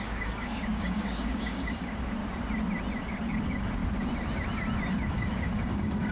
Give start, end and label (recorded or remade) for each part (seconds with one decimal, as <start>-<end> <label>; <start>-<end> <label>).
0.0-2.2 remade; 2.2-3.0 recorded; 3.0-3.8 remade; 3.8-5.1 recorded; 5.1-6.1 remade